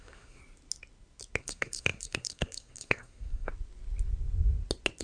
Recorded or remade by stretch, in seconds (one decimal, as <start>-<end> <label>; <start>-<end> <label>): 0.0-0.4 remade; 0.4-1.4 recorded; 1.4-3.5 remade; 3.5-5.0 recorded